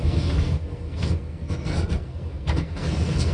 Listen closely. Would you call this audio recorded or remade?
remade